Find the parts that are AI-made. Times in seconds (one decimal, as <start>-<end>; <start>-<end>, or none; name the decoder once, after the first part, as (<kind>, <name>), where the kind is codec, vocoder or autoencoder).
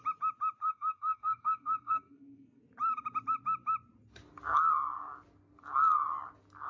0.6-2.6 (codec, SNAC)